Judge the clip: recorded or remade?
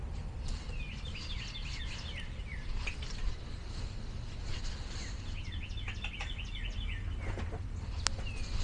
recorded